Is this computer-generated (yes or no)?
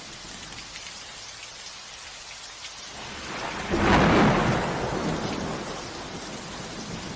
no